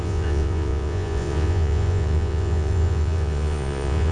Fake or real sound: fake